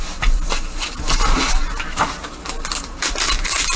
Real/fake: real